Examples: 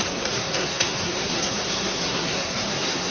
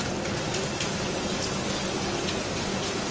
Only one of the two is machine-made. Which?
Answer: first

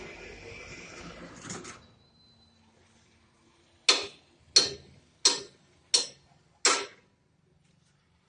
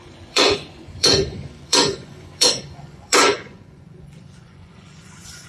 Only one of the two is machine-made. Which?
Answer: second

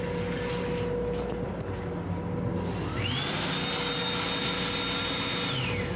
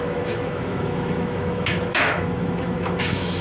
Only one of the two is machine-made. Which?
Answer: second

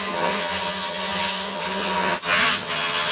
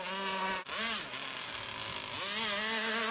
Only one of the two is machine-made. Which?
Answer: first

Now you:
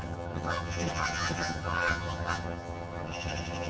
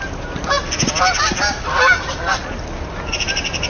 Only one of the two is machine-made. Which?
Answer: first